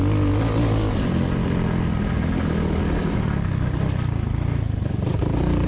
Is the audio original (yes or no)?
yes